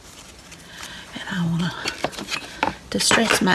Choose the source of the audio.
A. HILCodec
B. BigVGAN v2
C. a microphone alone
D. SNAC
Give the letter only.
C